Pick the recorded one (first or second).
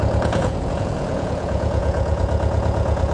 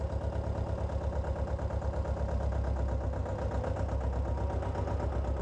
second